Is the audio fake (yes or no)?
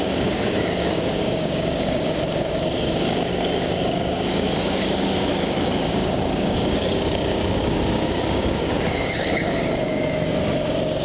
yes